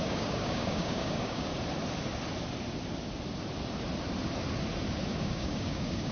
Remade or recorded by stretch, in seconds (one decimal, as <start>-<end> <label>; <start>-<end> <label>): 0.0-1.5 remade; 1.5-5.2 recorded; 5.2-6.1 remade